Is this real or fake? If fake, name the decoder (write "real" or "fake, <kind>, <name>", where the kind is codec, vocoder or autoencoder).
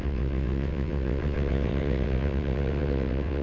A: fake, vocoder, WaveNeXt